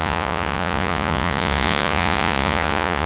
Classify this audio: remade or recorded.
remade